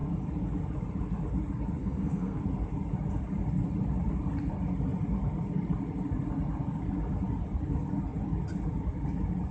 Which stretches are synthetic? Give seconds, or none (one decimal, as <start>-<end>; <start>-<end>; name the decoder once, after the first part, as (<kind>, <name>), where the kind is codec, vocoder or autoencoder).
1.8-2.4 (codec, SNAC)